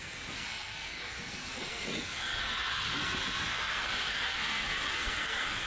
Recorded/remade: remade